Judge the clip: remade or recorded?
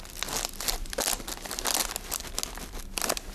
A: recorded